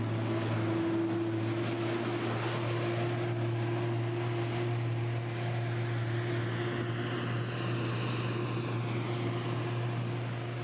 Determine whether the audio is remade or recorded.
recorded